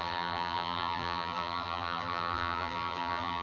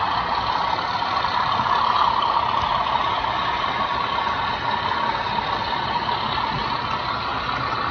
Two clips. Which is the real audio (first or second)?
second